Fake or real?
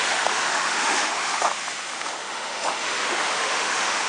fake